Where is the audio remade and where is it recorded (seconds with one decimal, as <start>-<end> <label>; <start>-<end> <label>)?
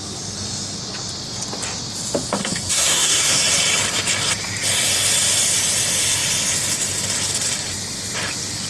0.0-2.4 recorded; 2.4-3.4 remade; 3.4-8.7 recorded